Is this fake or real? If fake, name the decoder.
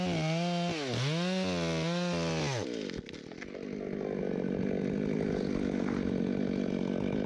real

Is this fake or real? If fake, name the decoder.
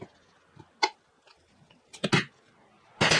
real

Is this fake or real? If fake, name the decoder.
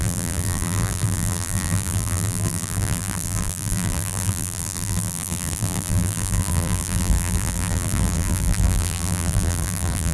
fake, vocoder, BigVGAN v2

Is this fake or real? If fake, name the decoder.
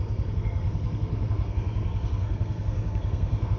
fake, codec, SNAC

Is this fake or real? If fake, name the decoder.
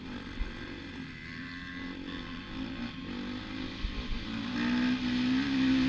real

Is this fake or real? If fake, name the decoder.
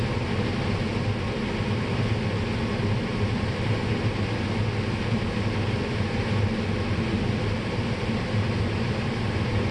real